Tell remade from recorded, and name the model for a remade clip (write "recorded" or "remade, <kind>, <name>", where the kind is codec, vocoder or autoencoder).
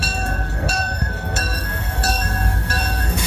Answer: remade, codec, SNAC